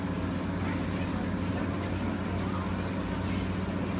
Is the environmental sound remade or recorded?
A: recorded